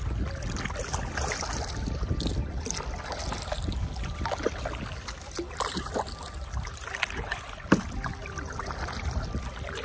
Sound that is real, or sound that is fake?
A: real